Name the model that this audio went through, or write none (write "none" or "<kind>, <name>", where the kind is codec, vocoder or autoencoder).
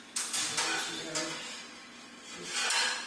none